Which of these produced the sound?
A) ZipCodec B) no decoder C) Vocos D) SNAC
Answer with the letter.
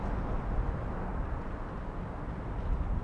B